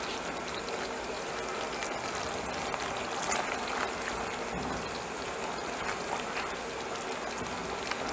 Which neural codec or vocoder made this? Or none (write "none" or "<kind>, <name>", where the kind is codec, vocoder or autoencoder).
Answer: none